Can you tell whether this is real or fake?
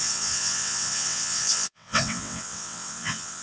fake